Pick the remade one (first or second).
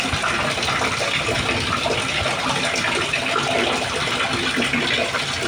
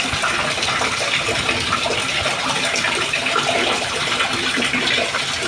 second